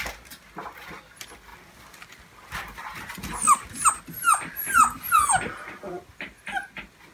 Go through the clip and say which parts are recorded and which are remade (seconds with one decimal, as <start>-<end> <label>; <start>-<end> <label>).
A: 0.0-7.1 recorded